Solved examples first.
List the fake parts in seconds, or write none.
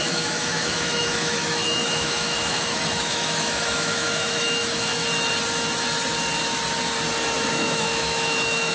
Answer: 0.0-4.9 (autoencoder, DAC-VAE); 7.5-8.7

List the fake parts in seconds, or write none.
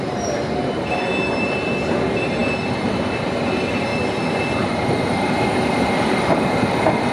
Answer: 0.0-3.9 (vocoder, BigVGAN v2); 4.6-7.1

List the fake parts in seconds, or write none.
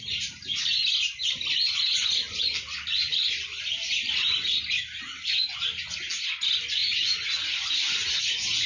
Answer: none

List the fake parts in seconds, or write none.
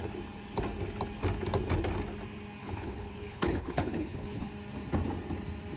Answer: 2.6-4.5 (codec, HILCodec)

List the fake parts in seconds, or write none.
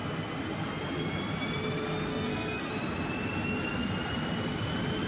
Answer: 2.1-2.7 (codec, SNAC)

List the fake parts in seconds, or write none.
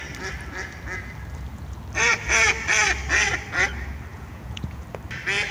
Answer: 4.1-4.8 (vocoder, Vocos)